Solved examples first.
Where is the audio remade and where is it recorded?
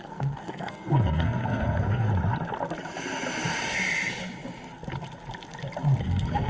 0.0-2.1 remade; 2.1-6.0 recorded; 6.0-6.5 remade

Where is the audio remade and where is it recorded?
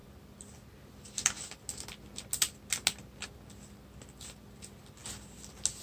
0.0-5.8 recorded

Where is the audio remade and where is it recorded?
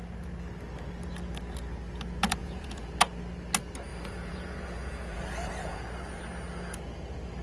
0.0-2.4 recorded; 2.4-2.9 remade; 2.9-3.9 recorded; 3.9-6.2 remade; 6.2-7.4 recorded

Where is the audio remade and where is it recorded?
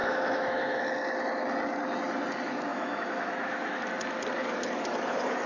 0.0-0.8 remade; 0.8-2.7 recorded; 2.7-3.8 remade; 3.8-5.5 recorded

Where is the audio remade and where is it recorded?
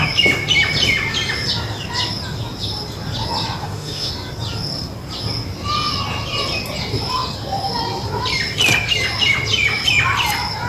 0.0-3.6 recorded; 3.6-4.1 remade; 4.1-10.7 recorded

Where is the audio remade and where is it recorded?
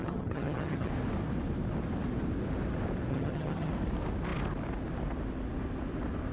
0.0-0.9 remade; 0.9-3.1 recorded; 3.1-3.7 remade; 3.7-6.3 recorded